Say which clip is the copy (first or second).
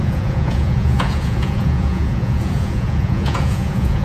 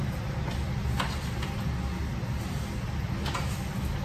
first